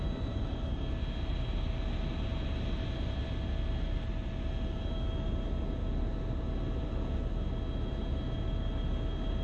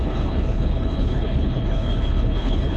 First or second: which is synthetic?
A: second